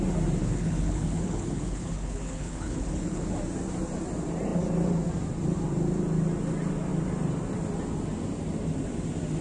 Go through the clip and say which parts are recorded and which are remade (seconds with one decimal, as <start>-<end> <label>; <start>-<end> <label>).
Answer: 0.0-0.4 recorded; 0.4-3.3 remade; 3.3-9.4 recorded